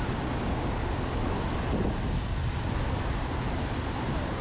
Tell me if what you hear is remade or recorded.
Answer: recorded